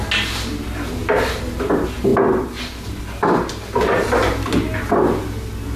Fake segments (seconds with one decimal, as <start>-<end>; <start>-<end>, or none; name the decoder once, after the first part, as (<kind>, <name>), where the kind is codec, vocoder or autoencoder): none